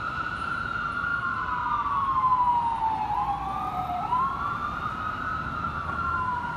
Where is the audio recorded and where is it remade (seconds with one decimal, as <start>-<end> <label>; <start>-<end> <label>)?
0.0-1.1 remade; 1.1-3.7 recorded; 3.7-6.6 remade